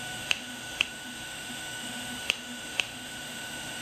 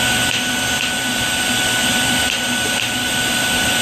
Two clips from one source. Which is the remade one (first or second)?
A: first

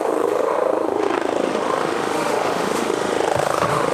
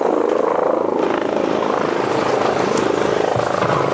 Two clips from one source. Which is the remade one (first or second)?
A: first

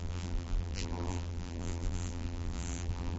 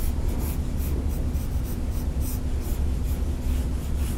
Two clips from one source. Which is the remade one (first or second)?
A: first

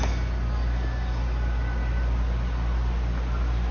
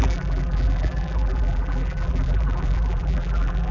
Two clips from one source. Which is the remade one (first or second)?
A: second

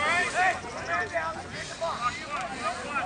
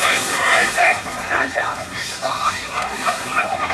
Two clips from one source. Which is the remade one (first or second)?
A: second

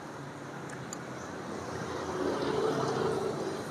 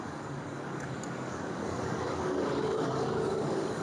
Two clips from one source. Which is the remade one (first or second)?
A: second